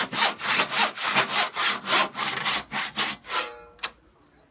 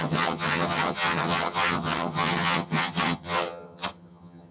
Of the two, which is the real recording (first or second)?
first